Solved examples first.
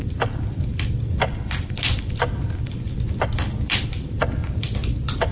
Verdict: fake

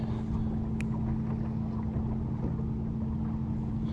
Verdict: real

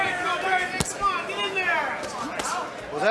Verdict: real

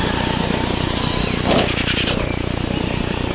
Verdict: real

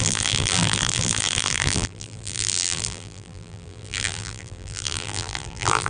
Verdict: fake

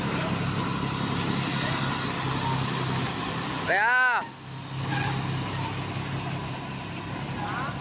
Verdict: real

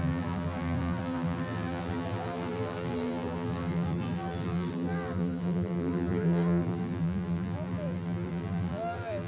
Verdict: fake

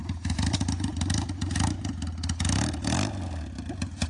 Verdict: real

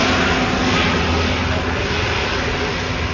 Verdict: real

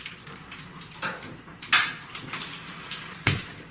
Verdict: fake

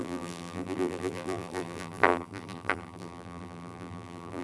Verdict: fake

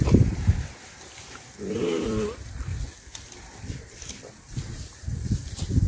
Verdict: fake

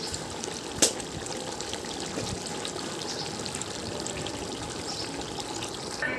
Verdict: real